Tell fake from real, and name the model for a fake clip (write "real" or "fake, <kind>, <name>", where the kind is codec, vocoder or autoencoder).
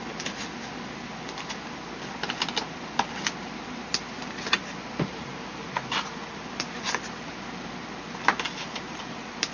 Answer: real